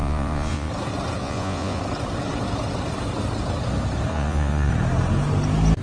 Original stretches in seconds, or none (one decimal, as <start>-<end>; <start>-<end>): 0.7-1.2; 1.8-4.1; 4.7-5.8